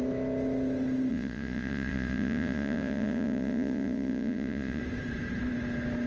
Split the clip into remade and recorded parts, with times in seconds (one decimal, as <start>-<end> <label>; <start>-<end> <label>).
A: 0.0-1.1 recorded; 1.1-4.8 remade; 4.8-6.1 recorded